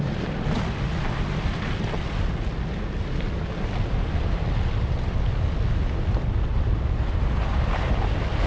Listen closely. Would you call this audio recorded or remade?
recorded